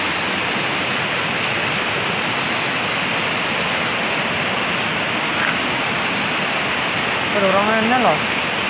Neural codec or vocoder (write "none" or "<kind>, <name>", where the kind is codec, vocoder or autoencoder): none